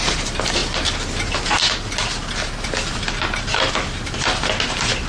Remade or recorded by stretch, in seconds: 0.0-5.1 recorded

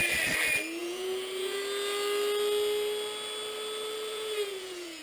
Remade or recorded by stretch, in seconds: 0.0-0.8 recorded; 0.8-1.6 remade; 1.6-4.1 recorded; 4.1-5.0 remade